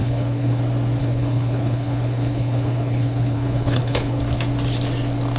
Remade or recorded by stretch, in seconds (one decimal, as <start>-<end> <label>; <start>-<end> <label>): 0.0-0.6 remade; 0.6-1.0 recorded; 1.0-4.2 remade; 4.2-5.4 recorded